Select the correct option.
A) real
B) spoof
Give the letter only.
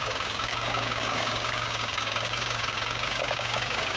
B